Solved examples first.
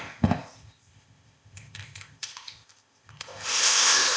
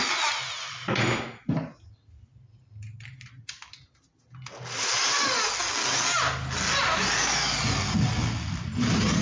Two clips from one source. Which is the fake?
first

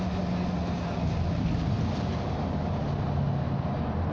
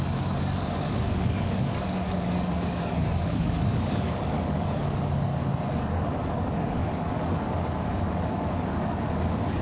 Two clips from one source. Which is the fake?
second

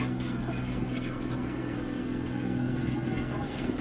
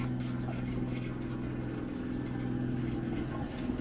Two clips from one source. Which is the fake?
first